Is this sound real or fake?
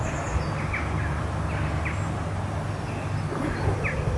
real